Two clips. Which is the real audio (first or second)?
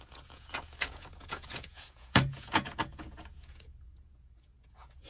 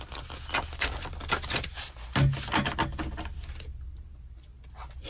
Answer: second